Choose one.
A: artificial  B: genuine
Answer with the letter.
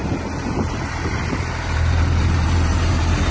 A